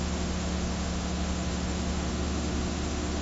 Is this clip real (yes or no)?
no